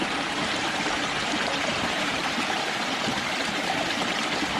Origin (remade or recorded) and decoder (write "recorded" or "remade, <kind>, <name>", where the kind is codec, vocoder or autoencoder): remade, vocoder, BigVGAN v2